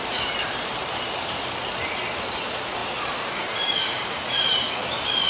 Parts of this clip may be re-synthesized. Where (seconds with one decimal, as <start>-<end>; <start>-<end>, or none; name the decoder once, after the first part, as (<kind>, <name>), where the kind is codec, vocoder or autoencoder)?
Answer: 0.0-1.4 (vocoder, BigVGAN v2); 2.8-4.7